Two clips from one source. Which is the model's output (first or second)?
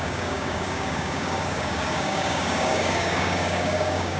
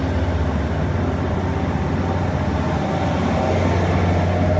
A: first